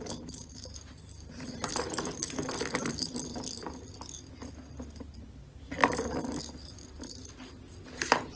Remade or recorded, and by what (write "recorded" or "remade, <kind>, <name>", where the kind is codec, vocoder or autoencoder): recorded